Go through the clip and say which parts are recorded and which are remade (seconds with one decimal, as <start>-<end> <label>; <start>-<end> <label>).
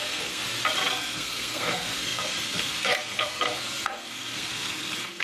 0.0-0.4 remade; 0.4-0.9 recorded; 0.9-5.2 remade